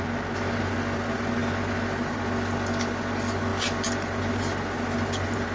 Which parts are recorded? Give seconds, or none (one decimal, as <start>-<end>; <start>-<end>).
0.0-5.5